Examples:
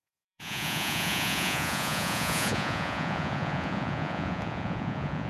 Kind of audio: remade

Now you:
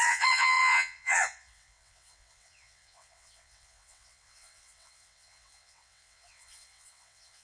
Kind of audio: remade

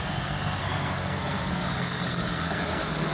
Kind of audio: remade